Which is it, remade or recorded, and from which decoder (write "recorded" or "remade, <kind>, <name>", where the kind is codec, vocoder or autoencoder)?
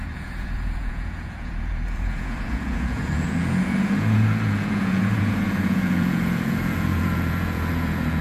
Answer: remade, vocoder, Vocos